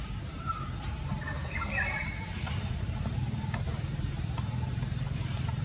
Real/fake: fake